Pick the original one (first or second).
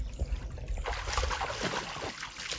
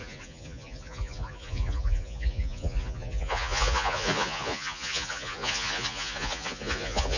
first